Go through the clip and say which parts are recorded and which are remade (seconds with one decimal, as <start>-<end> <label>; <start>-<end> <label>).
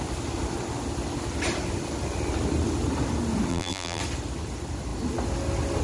0.0-3.5 recorded; 3.5-4.0 remade; 4.0-5.8 recorded